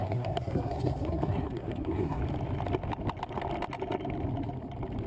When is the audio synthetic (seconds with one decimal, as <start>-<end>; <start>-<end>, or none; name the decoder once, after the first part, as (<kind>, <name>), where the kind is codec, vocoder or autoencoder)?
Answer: 0.0-2.2 (codec, SNAC)